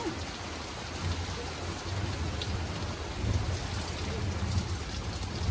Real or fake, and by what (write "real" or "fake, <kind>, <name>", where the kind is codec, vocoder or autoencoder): real